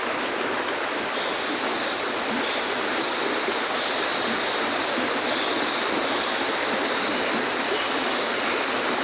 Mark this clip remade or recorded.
recorded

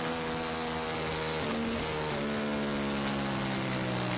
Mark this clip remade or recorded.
recorded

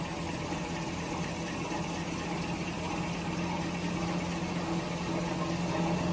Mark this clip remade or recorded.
recorded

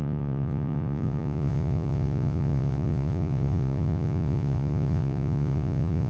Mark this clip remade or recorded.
remade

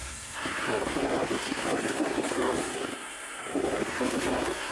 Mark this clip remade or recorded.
remade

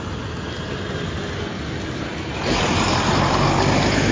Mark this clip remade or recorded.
recorded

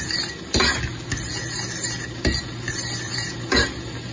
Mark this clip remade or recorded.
recorded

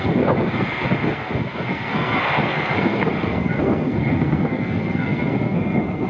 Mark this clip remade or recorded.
remade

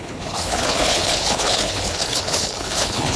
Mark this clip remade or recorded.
remade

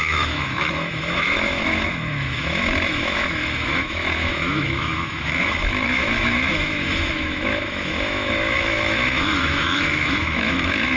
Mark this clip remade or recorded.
remade